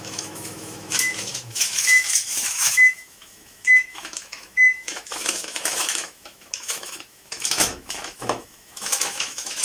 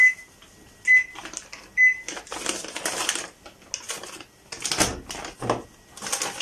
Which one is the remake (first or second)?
first